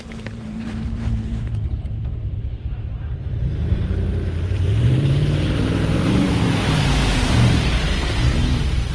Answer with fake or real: fake